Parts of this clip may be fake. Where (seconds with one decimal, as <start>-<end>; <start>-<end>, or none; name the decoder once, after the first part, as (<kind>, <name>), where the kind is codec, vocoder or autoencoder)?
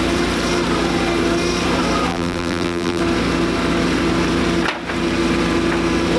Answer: 2.1-3.0 (vocoder, BigVGAN v2)